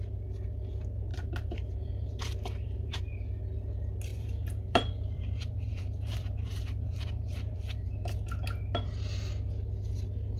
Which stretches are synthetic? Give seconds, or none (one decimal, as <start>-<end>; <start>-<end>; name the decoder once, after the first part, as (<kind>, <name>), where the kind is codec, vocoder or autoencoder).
1.1-3.0 (vocoder, BigVGAN v2); 4.1-7.9